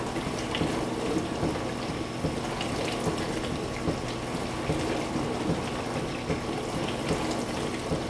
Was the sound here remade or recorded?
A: recorded